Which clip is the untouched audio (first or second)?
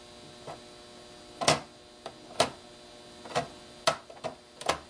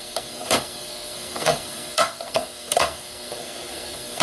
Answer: first